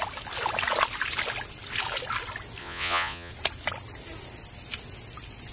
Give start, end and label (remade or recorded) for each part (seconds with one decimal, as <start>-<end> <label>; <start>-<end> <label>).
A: 0.0-2.6 recorded; 2.6-3.3 remade; 3.3-5.5 recorded